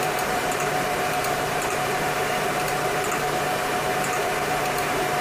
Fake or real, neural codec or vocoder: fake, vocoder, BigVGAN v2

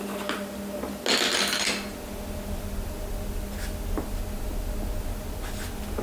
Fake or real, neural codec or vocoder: real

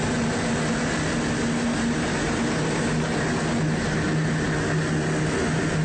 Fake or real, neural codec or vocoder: real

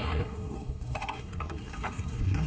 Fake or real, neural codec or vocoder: fake, codec, SNAC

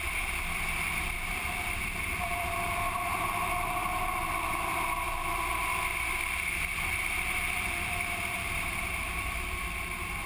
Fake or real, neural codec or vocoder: fake, vocoder, BigVGAN v2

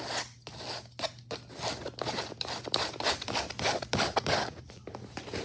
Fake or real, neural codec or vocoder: real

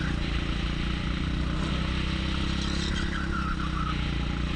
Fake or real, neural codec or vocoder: real